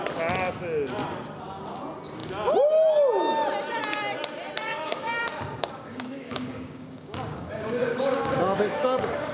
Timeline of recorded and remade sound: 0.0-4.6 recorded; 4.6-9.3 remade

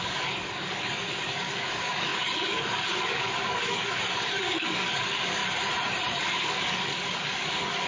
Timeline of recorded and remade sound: 0.0-5.4 remade; 5.4-6.2 recorded; 6.2-7.9 remade

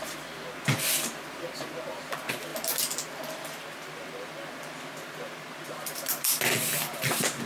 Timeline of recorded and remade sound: 0.0-2.5 remade; 2.5-3.3 recorded; 3.3-7.5 remade

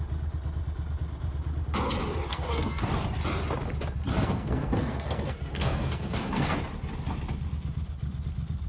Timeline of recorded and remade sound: 0.0-2.3 recorded; 2.3-2.9 remade; 2.9-4.1 recorded; 4.1-6.6 remade; 6.6-8.7 recorded

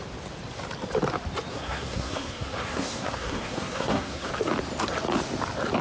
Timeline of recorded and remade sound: 0.0-1.5 recorded; 1.5-4.3 remade; 4.3-5.8 recorded